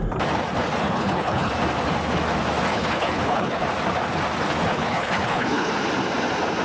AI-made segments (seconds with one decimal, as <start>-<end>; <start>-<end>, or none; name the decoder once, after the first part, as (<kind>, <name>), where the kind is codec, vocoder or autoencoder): 0.8-1.5 (codec, HILCodec); 2.7-3.6; 4.7-5.7

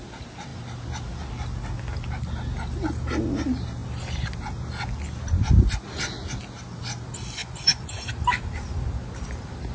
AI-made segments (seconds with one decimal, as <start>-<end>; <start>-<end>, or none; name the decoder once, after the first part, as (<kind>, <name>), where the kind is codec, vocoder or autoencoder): 7.4-8.0 (vocoder, Vocos)

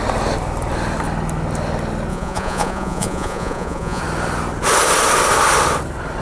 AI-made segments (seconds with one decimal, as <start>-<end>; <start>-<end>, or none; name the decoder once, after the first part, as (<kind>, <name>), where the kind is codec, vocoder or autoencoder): 2.1-4.0 (vocoder, Vocos)

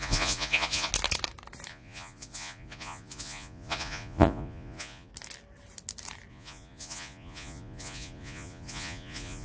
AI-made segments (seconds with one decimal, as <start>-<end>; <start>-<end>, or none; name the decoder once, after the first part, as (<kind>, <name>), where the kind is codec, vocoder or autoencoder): 0.0-0.9 (vocoder, Vocos); 1.7-5.1; 6.3-9.4